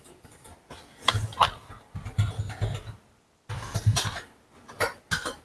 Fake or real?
real